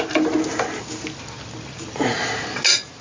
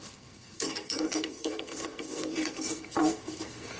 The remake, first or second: second